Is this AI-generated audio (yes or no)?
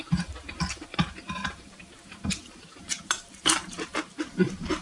yes